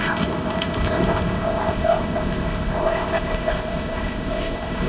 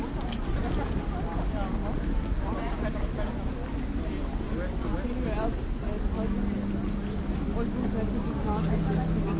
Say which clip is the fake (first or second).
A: first